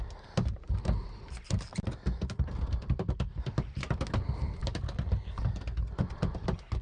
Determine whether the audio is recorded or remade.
recorded